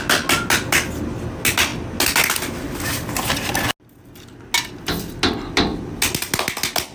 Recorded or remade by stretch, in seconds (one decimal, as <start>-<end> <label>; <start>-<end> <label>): 0.0-6.9 recorded